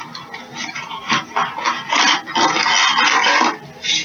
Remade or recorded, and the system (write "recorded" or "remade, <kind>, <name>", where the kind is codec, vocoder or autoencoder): recorded